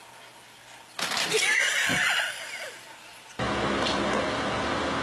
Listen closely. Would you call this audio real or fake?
real